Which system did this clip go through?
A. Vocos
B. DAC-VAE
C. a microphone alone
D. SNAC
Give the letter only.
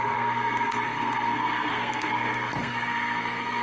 D